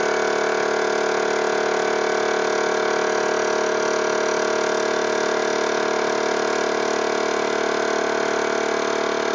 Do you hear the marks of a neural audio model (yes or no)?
no